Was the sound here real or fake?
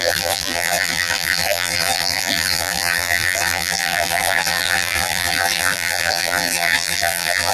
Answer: fake